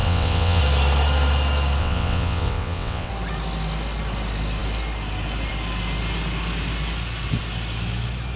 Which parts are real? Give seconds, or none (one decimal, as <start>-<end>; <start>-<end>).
0.6-1.8; 3.1-8.4